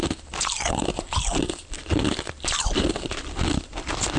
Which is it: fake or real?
fake